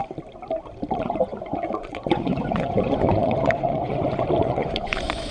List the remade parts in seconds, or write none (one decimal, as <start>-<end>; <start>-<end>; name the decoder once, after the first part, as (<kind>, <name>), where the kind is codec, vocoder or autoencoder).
0.9-5.3 (vocoder, Vocos)